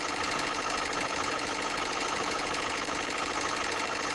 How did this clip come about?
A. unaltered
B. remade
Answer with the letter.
B